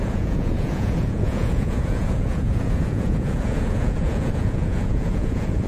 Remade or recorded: remade